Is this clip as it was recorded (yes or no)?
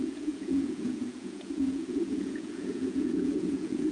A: no